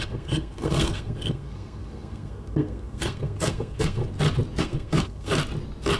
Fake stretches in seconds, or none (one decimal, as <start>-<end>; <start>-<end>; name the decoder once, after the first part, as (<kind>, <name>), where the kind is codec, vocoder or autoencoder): 0.0-4.0 (codec, SNAC); 4.6-5.3